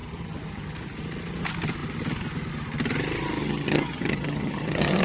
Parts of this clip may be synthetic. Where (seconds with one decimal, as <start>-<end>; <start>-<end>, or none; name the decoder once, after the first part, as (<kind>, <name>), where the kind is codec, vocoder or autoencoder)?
3.4-5.0 (vocoder, HiFi-GAN)